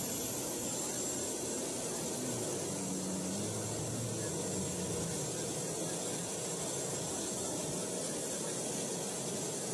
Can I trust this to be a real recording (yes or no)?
yes